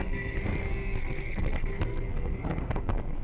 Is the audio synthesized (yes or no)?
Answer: yes